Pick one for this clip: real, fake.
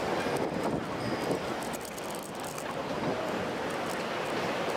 real